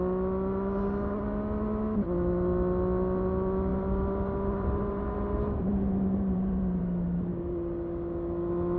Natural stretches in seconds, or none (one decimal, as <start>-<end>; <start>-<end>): 0.0-3.7; 6.8-8.8